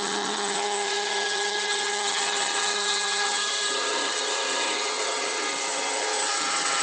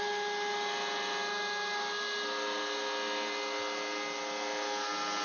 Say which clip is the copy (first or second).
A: first